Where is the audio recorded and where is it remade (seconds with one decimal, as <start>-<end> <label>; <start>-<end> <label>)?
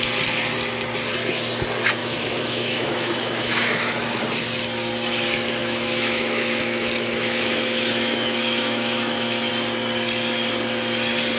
0.0-2.0 recorded; 2.0-4.2 remade; 4.2-5.6 recorded; 5.6-9.5 remade; 9.5-11.4 recorded